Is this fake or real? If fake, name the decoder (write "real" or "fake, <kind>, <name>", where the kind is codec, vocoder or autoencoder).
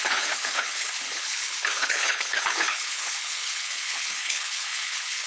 fake, codec, HILCodec